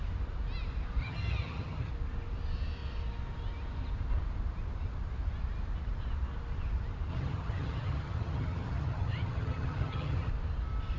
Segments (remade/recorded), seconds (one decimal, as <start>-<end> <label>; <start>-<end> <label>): 0.0-1.0 recorded; 1.0-1.9 remade; 1.9-7.1 recorded; 7.1-10.3 remade; 10.3-11.0 recorded